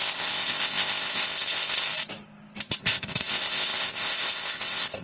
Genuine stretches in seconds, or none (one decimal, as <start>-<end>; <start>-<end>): 1.9-2.8